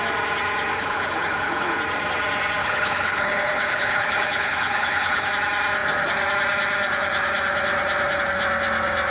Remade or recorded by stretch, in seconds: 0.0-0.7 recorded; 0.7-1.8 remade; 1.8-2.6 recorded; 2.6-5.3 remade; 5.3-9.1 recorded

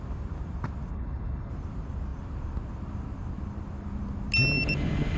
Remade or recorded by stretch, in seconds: 0.0-0.9 recorded; 0.9-1.5 remade; 1.5-5.2 recorded

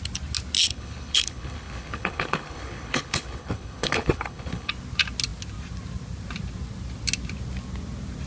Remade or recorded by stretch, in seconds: 0.0-0.6 recorded; 0.6-4.7 remade; 4.7-8.3 recorded

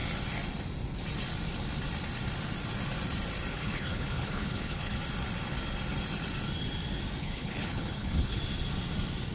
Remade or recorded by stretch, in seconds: 0.0-3.5 recorded; 3.5-5.0 remade; 5.0-7.2 recorded; 7.2-8.4 remade; 8.4-9.3 recorded